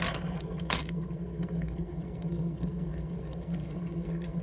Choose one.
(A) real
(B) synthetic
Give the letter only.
B